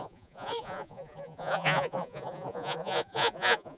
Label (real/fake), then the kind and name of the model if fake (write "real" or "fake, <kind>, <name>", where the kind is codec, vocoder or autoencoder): fake, vocoder, Vocos